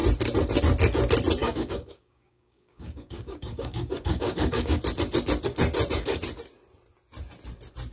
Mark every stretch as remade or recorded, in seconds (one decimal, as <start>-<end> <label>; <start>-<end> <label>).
0.0-1.4 recorded; 1.4-4.8 remade; 4.8-7.9 recorded